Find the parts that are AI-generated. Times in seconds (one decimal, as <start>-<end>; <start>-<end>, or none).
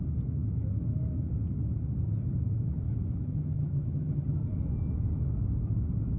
3.3-4.4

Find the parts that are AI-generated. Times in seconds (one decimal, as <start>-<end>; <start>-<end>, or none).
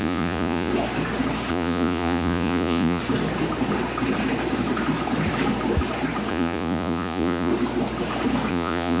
0.0-0.7; 1.5-3.0; 6.3-7.5; 8.5-9.0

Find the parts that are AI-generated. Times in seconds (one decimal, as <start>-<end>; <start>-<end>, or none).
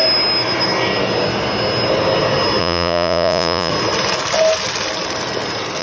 2.6-3.7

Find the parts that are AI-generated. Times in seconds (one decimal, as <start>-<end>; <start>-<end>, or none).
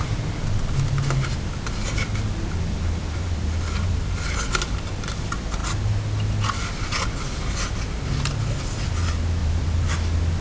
3.0-5.1; 9.4-9.9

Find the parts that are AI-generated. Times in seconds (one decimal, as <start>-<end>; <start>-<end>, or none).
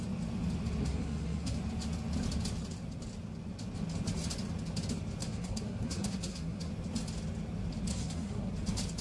0.8-1.6; 5.2-6.7; 7.9-8.5